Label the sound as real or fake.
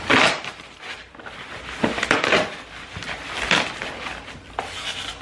real